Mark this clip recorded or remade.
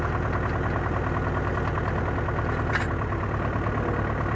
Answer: recorded